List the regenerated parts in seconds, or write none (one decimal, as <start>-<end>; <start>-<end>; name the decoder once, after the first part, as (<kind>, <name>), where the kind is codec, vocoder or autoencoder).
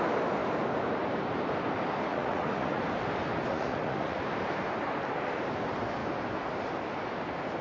2.1-2.8 (vocoder, Vocos); 3.5-4.2